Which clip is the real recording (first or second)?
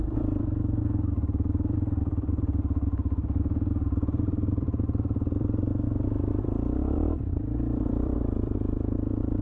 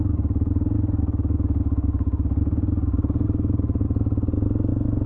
second